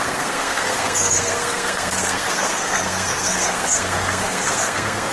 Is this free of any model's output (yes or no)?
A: no